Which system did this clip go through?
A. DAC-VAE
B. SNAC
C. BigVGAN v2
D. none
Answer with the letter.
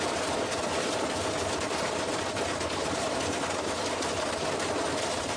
C